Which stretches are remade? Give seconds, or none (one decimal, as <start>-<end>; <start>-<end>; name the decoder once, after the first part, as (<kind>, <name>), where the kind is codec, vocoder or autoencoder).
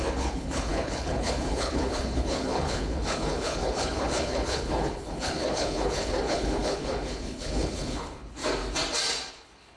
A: 0.0-8.4 (codec, HILCodec); 9.3-9.8